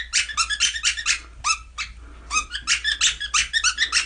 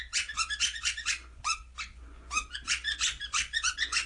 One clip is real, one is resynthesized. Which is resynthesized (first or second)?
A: second